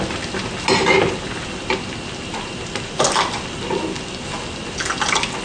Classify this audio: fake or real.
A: real